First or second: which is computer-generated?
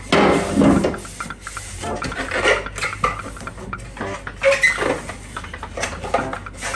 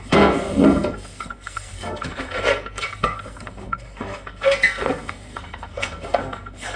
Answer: second